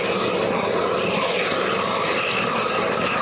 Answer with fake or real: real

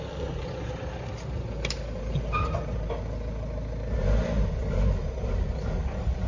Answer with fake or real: real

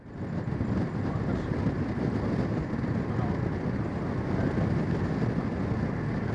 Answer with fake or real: real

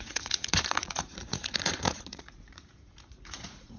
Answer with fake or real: fake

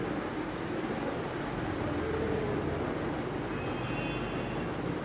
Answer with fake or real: real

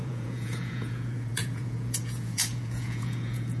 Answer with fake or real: fake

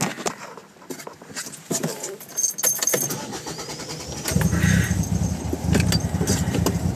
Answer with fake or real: real